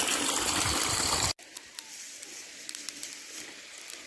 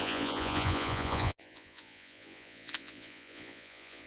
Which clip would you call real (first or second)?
first